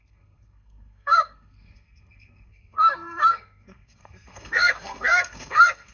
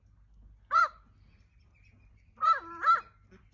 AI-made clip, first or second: first